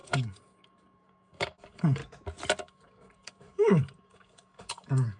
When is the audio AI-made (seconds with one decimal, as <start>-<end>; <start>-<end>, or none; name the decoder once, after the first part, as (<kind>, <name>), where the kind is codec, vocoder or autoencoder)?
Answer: 0.0-2.0 (codec, DAC); 2.6-5.2